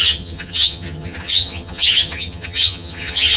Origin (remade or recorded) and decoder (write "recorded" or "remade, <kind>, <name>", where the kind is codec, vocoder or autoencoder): remade, vocoder, HiFi-GAN